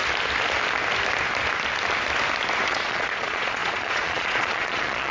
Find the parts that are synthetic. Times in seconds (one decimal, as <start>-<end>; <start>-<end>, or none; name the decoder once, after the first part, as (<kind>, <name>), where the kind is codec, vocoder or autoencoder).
2.7-5.1 (vocoder, Vocos)